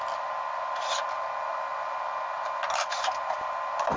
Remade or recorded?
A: recorded